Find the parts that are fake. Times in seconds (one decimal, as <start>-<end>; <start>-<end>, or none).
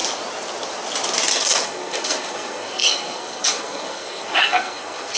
1.3-5.2